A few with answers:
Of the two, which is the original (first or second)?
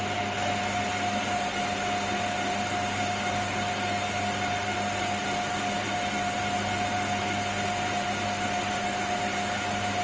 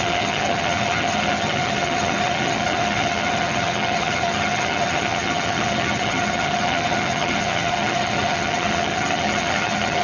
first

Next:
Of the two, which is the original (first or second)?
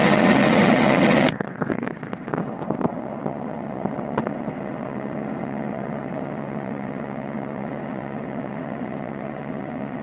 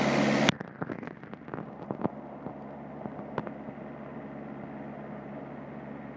second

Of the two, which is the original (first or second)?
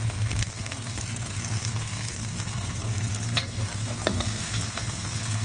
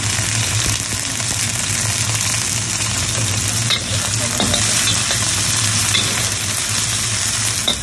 second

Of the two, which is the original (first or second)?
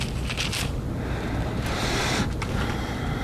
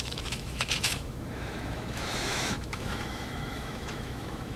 first